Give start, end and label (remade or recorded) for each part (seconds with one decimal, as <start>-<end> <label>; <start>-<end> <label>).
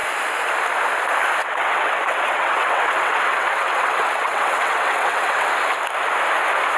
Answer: 0.0-1.4 recorded; 1.4-5.5 remade; 5.5-6.8 recorded